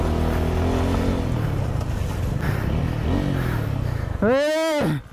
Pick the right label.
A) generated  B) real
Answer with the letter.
B